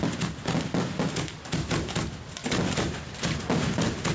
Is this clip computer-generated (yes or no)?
no